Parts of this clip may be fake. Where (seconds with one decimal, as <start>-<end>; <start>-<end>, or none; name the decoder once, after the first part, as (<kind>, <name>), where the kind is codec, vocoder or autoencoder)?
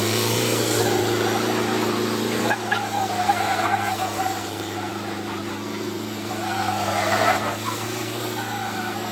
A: 0.0-1.0 (codec, SNAC); 2.4-4.9; 5.5-9.1